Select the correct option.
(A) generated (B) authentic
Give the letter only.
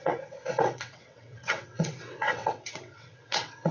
A